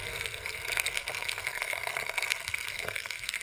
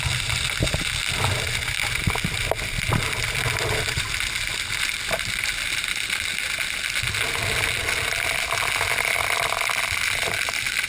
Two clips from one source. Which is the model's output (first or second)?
first